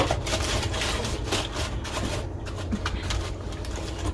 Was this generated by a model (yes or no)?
no